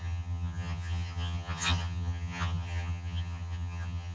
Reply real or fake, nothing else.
fake